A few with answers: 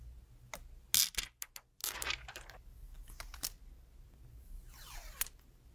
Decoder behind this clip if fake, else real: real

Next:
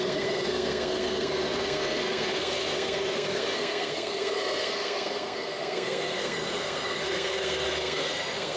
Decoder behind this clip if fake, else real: fake, codec, SNAC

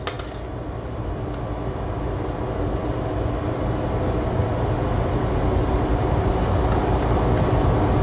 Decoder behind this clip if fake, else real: real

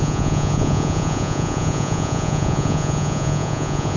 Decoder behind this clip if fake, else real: fake, vocoder, Vocos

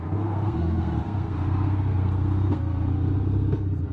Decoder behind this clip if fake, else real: fake, codec, SNAC